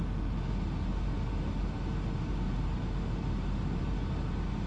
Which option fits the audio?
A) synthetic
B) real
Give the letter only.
B